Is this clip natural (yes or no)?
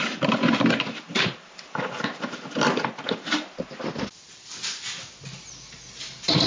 yes